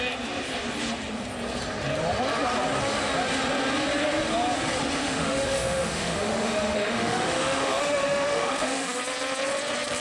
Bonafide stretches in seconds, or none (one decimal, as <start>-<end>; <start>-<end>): 0.0-5.0; 9.0-10.0